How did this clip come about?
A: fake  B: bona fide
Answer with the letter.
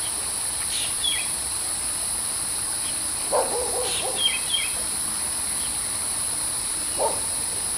B